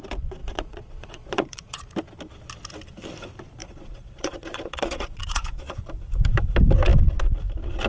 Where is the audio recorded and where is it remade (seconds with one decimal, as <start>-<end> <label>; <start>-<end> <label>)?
0.0-0.4 recorded; 0.4-1.9 remade; 1.9-3.6 recorded; 3.6-5.8 remade; 5.8-7.9 recorded